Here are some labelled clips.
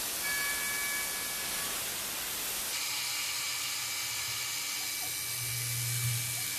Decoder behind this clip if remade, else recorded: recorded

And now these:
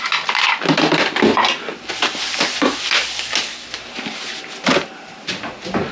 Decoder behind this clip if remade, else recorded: recorded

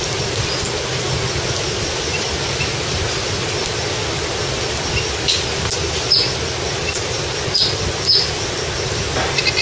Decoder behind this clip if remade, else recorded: recorded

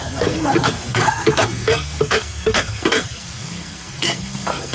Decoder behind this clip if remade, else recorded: remade, codec, SNAC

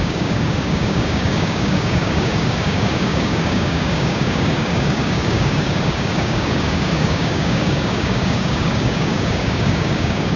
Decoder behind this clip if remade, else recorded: remade, codec, DAC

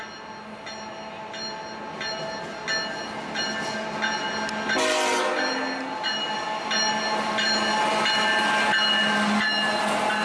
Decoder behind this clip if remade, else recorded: recorded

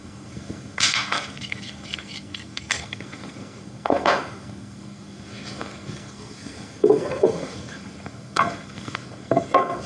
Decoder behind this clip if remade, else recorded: remade, codec, SNAC